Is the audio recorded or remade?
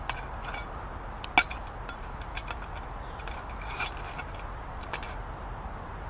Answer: recorded